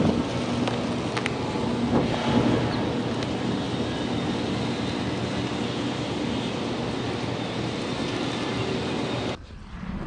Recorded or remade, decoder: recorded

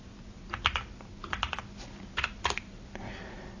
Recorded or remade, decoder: recorded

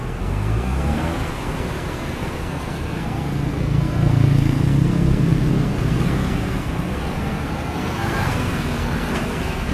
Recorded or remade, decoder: remade, codec, SNAC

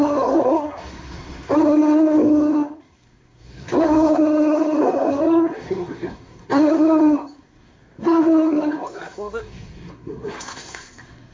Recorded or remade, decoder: remade, codec, SNAC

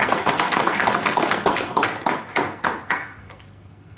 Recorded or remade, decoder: remade, codec, SNAC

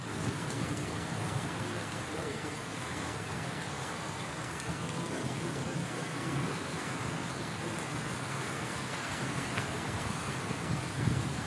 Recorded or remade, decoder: remade, codec, SNAC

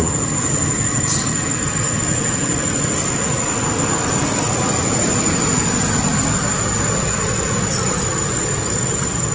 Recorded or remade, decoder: recorded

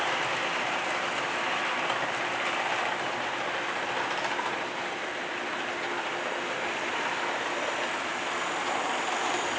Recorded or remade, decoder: recorded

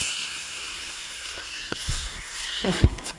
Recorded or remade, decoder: remade, codec, SNAC